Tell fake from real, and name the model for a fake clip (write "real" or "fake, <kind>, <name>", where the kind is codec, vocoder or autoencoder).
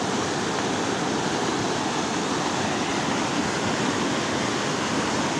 real